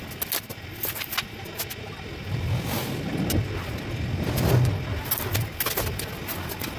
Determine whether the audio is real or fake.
real